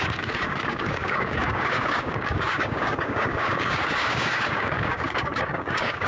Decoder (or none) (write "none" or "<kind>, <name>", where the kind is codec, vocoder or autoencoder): codec, DAC